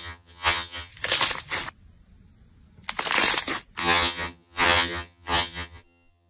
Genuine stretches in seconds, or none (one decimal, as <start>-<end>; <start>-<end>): 0.9-3.8